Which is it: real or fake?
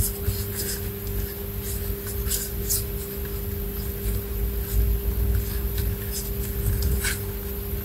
real